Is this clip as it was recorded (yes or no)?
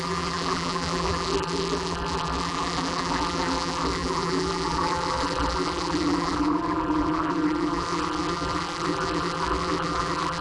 no